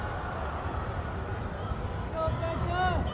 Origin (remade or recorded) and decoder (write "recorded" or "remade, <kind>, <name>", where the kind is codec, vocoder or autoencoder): recorded